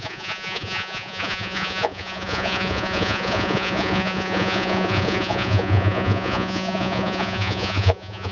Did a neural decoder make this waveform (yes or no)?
yes